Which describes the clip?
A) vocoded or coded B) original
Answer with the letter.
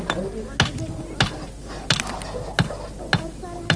B